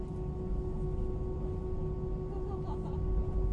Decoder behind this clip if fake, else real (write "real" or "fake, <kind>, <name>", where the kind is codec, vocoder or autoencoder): real